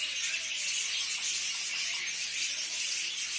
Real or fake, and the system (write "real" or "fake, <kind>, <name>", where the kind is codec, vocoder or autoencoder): real